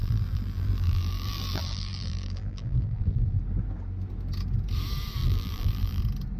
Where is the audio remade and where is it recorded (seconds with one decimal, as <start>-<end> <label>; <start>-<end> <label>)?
0.0-3.4 remade; 3.4-5.2 recorded; 5.2-6.0 remade; 6.0-6.4 recorded